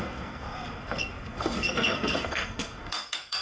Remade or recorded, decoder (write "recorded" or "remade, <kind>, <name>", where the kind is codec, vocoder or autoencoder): remade, codec, SNAC